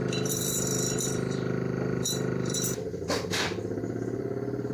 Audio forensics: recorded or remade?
remade